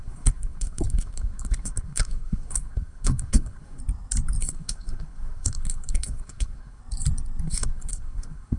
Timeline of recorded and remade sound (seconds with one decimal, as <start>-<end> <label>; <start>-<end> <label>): 0.0-3.8 remade; 3.8-4.4 recorded; 4.4-6.8 remade; 6.8-7.4 recorded; 7.4-8.6 remade